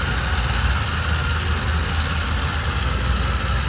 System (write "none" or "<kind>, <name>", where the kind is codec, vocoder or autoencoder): none